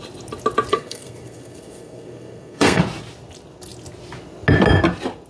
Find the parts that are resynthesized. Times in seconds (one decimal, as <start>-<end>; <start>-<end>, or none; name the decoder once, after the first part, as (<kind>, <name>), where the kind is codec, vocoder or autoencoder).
0.7-2.8 (codec, SNAC)